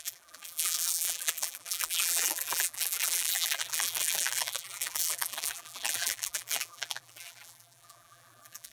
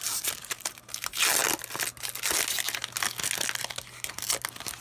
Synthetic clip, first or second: first